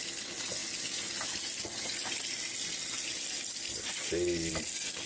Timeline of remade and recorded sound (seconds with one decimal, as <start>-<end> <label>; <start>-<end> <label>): 0.0-5.1 recorded